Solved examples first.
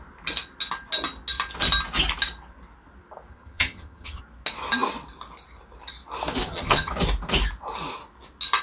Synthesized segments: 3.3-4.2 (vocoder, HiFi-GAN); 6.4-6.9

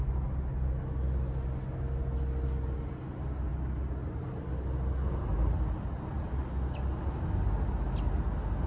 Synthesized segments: none

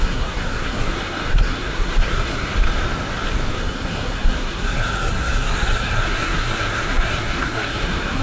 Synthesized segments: 0.0-2.5 (codec, SNAC); 3.5-8.2

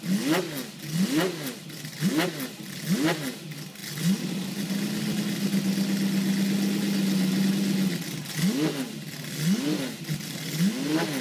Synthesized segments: none

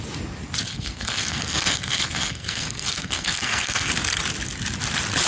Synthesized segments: 0.7-3.9 (codec, SNAC)

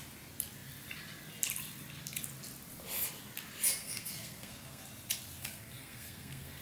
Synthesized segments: 3.8-4.8 (codec, SNAC); 5.4-6.6